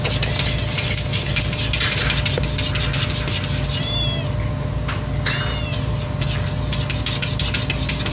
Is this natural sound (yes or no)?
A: yes